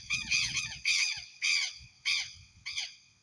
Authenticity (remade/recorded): remade